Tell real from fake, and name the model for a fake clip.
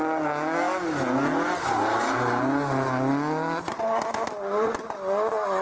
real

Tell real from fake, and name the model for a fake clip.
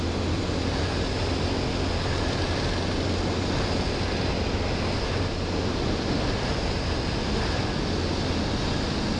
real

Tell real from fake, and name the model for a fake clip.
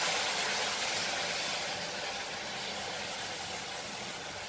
real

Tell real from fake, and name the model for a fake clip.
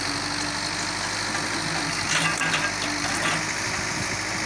real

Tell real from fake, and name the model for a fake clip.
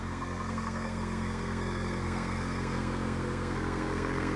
fake, codec, SNAC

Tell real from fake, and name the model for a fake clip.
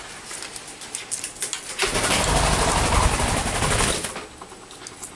real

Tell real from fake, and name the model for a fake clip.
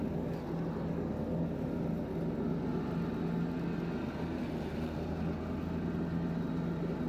real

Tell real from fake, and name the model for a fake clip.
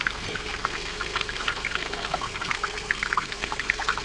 fake, codec, SNAC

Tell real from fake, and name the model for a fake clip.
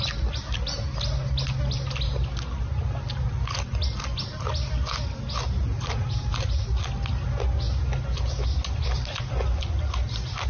real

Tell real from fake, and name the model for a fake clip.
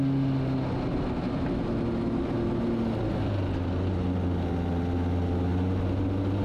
real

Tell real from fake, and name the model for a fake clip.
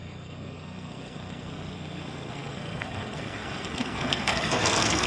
fake, codec, SNAC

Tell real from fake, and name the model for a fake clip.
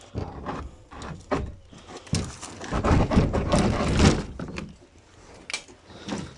real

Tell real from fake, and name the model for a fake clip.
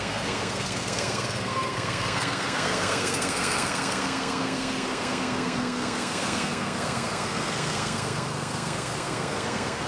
fake, codec, SNAC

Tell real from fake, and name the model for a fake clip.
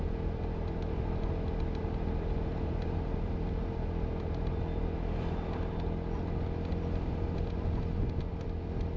real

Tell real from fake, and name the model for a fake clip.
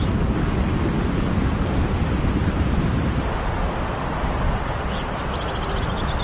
real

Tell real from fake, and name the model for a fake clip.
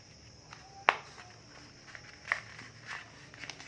real